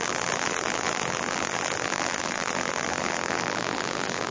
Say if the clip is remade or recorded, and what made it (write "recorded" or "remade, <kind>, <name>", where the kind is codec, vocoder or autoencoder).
remade, vocoder, BigVGAN v2